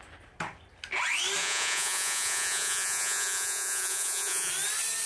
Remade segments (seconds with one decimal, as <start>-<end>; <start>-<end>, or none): 1.4-4.5